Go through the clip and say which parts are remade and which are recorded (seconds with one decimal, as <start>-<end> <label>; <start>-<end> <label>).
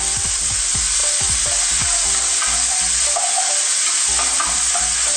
0.0-0.6 remade; 0.6-5.2 recorded